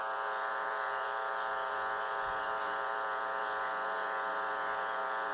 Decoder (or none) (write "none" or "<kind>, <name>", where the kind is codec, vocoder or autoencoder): vocoder, Vocos